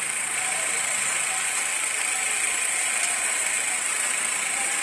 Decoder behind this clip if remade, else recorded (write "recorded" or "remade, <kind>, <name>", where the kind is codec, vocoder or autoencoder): remade, vocoder, BigVGAN v2